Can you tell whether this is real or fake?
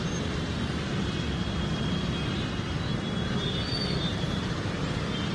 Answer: fake